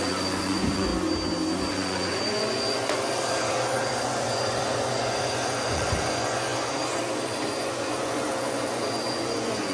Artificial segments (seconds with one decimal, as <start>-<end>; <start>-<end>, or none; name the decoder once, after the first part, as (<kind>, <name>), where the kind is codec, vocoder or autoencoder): 0.0-0.9 (vocoder, Vocos); 1.6-9.7